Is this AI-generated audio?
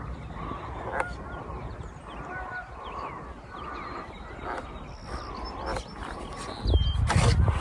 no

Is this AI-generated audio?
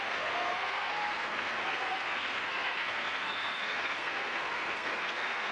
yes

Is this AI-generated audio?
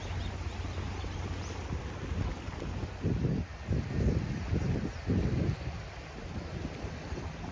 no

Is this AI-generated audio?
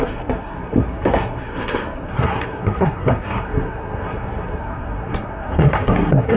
yes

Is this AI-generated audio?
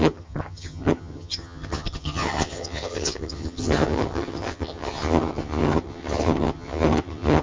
yes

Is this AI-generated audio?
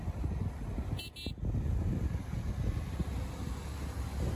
no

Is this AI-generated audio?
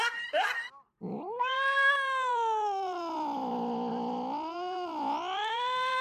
yes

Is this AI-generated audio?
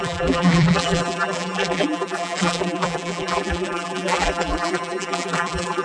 yes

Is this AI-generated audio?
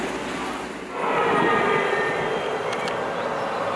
no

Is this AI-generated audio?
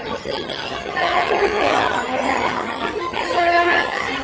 yes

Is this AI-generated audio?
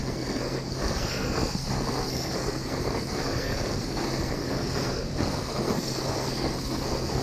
yes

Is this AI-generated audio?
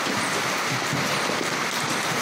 no